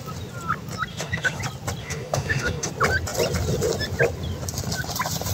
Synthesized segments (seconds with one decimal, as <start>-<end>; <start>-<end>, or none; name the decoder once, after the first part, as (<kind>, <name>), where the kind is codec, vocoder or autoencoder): 0.9-1.4 (autoencoder, DAC-VAE); 1.8-2.7